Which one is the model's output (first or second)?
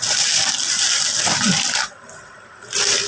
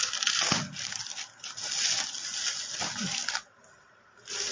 first